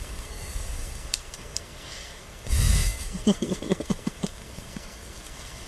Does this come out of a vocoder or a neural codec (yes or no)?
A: yes